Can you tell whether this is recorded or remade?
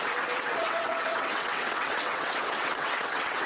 remade